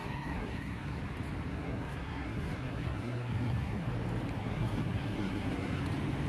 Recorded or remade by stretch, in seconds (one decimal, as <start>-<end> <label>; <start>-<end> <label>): 0.0-1.0 remade; 1.0-1.5 recorded; 1.5-3.9 remade; 3.9-4.4 recorded; 4.4-5.8 remade; 5.8-6.3 recorded